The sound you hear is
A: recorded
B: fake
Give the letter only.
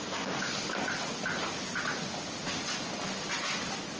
A